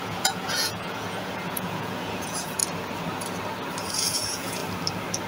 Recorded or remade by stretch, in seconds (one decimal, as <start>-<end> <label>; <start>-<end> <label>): 0.0-2.6 remade; 2.6-3.9 recorded; 3.9-4.6 remade; 4.6-5.3 recorded